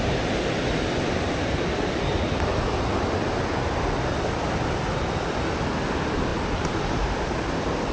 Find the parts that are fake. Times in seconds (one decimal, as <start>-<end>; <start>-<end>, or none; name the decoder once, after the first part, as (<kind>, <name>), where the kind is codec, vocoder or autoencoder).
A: none